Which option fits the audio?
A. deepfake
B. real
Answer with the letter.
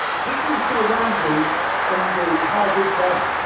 B